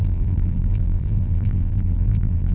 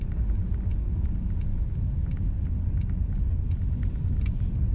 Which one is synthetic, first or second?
first